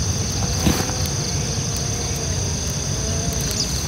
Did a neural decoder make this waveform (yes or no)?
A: no